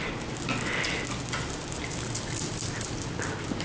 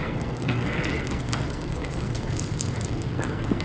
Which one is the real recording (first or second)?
first